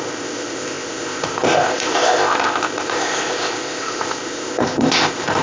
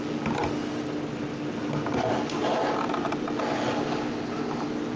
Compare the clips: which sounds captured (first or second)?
second